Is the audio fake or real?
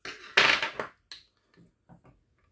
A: real